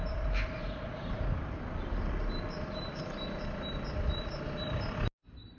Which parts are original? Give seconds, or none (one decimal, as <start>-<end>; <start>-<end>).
3.4-5.6